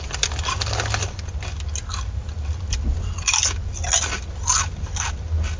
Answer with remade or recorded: recorded